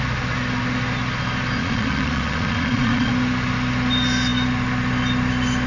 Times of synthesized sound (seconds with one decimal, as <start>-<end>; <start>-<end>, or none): 1.6-3.1